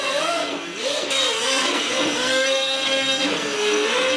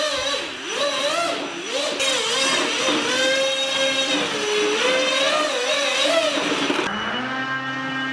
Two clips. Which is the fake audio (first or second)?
first